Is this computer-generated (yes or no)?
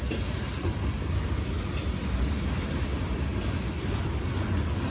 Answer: no